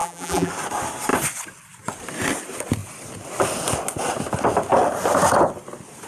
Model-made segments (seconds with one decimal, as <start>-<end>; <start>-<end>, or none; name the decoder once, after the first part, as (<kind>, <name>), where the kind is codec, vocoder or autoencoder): 0.0-0.5 (vocoder, BigVGAN v2)